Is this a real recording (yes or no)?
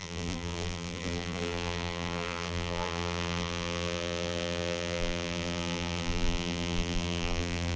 no